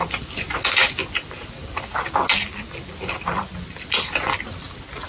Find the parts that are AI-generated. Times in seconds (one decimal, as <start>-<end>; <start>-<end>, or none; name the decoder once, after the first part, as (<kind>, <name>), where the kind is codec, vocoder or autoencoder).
none